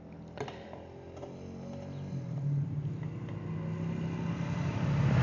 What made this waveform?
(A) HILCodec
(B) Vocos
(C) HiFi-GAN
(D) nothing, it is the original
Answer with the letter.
D